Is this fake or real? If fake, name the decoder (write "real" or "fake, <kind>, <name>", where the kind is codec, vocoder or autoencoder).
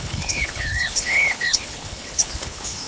fake, codec, HILCodec